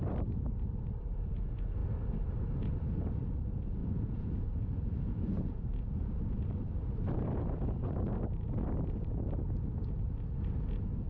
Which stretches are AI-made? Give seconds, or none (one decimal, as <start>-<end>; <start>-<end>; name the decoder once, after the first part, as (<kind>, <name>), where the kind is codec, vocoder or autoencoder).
3.8-6.1 (vocoder, Vocos)